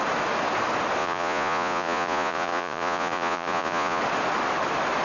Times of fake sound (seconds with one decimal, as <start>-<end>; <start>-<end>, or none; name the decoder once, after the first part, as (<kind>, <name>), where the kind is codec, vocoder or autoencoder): 1.0-4.0 (vocoder, Vocos)